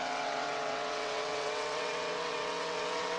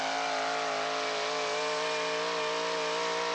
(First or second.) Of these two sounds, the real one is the second